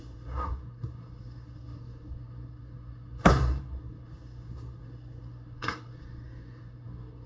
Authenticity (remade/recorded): remade